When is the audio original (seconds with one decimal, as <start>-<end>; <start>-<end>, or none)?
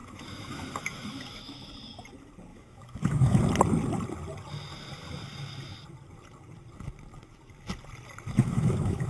1.7-2.5; 3.4-8.4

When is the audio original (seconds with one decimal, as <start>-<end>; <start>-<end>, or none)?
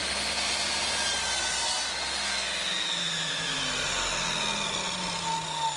0.0-3.0; 3.6-5.8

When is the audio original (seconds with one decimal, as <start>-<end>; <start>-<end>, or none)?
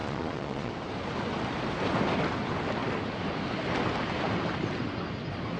0.7-5.6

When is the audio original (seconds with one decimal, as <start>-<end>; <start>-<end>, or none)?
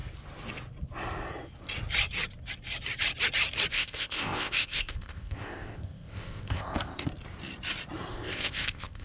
0.0-3.7; 7.1-8.1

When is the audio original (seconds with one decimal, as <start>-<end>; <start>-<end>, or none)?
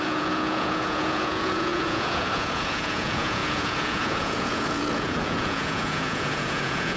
none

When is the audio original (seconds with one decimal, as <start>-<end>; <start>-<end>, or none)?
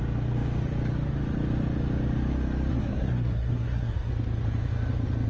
0.0-2.7; 4.1-5.3